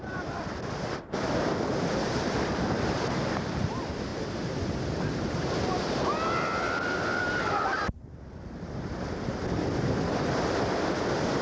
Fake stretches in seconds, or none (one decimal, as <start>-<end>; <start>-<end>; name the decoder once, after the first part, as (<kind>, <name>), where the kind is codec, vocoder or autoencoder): 0.0-11.4 (vocoder, BigVGAN v2)